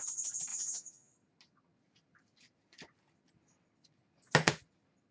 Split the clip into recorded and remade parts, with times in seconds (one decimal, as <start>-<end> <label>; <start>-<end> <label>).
0.0-0.5 recorded; 0.5-1.1 remade; 1.1-5.1 recorded